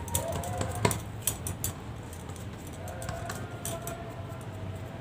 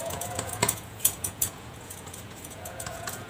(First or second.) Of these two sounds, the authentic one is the first